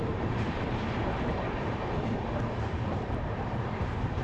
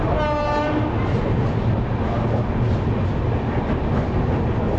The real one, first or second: second